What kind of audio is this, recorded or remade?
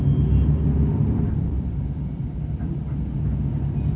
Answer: recorded